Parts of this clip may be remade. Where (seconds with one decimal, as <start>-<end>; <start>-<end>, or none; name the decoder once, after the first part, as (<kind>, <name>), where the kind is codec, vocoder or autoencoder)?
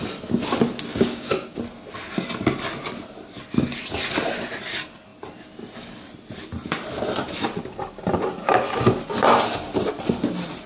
0.9-1.6 (codec, DAC)